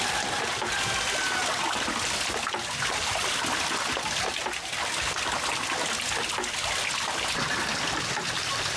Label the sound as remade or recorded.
recorded